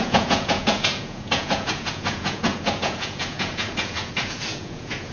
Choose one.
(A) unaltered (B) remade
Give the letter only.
B